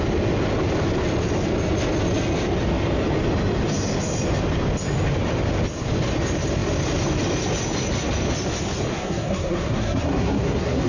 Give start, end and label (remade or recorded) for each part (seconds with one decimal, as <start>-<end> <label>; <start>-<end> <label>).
0.0-8.9 recorded; 8.9-10.9 remade